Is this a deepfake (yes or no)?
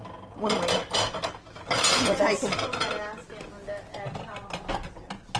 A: no